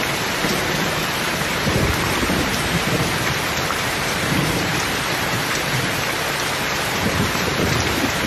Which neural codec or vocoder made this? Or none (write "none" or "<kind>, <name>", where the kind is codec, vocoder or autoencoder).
vocoder, BigVGAN v2